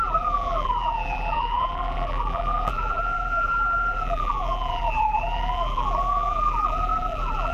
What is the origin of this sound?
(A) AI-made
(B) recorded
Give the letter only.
A